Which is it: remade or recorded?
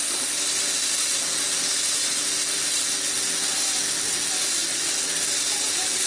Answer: recorded